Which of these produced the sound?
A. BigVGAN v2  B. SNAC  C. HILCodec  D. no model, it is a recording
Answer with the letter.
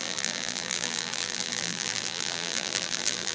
A